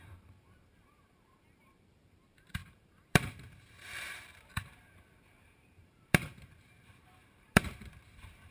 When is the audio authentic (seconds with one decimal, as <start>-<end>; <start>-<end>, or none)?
none